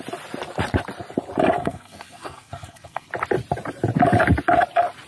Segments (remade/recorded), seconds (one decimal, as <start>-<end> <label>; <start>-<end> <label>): 0.0-1.6 recorded; 1.6-3.1 remade; 3.1-5.1 recorded